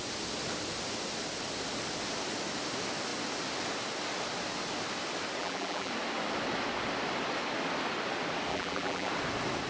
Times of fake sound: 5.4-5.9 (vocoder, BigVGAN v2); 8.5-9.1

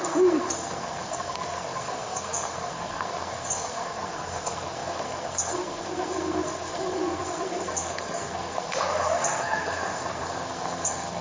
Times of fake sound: 0.0-11.2 (codec, SNAC)

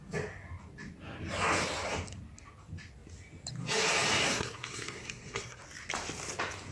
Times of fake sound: 4.2-5.6 (codec, SNAC)

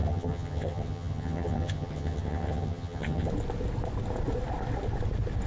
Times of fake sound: 0.0-3.3 (vocoder, HiFi-GAN)

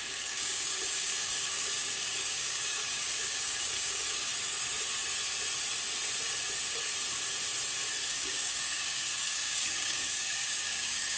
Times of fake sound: 0.0-4.3 (codec, DAC); 8.1-11.2

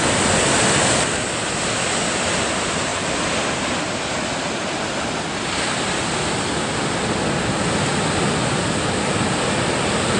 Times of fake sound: none

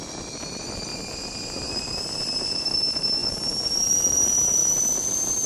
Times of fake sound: 0.9-2.0 (vocoder, BigVGAN v2); 3.2-4.0; 4.6-5.5